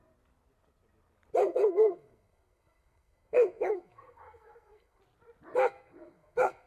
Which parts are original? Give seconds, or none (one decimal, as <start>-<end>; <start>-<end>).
0.0-1.4; 5.0-5.6